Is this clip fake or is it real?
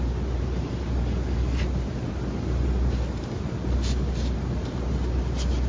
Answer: real